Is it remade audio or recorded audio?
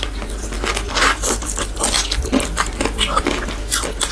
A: recorded